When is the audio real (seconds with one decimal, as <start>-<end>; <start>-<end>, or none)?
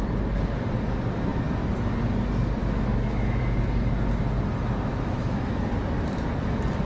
0.0-2.6; 3.4-4.9; 5.7-6.8